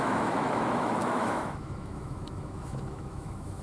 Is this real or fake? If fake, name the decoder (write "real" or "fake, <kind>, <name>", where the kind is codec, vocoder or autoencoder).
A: fake, autoencoder, DAC-VAE